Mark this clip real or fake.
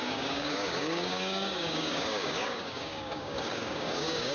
fake